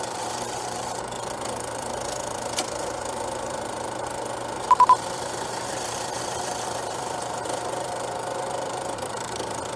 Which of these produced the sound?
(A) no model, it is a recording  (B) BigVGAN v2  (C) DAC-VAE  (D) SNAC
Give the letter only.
B